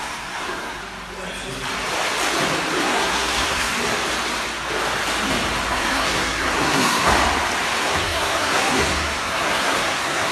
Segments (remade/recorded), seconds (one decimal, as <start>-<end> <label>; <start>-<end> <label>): 0.0-0.8 remade; 0.8-2.8 recorded; 2.8-3.7 remade; 3.7-5.7 recorded; 5.7-7.1 remade; 7.1-7.8 recorded; 7.8-10.3 remade